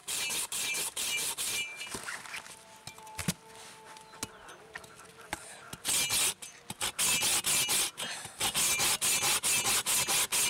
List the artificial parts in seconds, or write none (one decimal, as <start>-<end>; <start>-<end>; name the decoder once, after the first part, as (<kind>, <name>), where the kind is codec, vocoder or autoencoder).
0.0-2.2 (vocoder, BigVGAN v2)